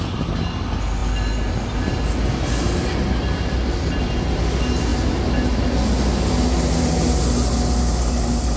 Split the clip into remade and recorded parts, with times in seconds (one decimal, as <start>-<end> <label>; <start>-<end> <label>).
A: 0.0-8.6 recorded